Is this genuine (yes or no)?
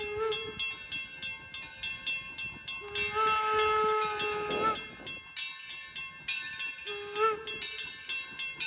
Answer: yes